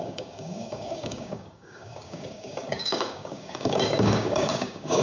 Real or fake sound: fake